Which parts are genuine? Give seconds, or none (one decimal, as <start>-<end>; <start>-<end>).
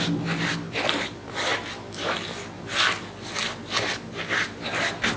0.0-5.2